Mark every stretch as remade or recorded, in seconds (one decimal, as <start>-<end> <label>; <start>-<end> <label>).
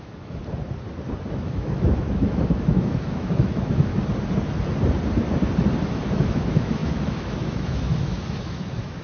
0.0-0.4 remade; 0.4-1.3 recorded; 1.3-3.9 remade; 3.9-5.9 recorded; 5.9-9.0 remade